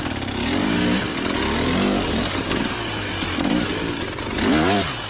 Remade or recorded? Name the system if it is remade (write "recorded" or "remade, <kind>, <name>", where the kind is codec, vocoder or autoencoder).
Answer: recorded